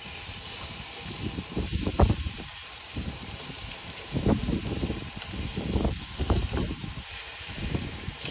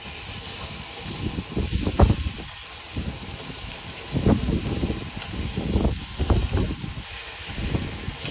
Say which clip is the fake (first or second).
first